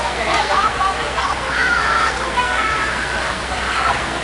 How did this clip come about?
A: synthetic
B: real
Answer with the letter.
A